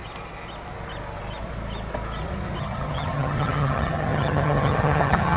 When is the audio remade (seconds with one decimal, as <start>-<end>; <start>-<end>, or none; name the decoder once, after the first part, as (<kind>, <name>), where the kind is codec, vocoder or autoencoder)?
2.6-5.4 (vocoder, HiFi-GAN)